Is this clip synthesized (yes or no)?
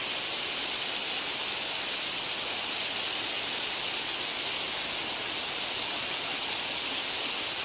no